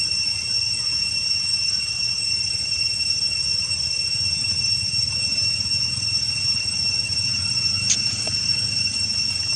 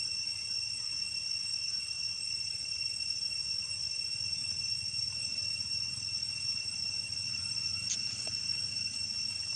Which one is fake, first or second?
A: first